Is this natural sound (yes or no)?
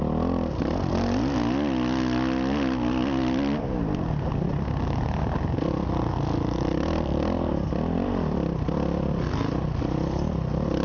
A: yes